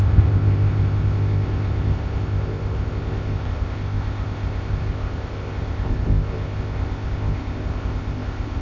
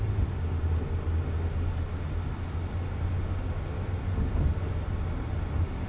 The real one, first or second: second